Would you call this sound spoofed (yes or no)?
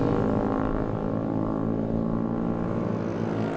no